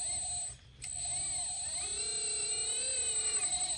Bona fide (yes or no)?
yes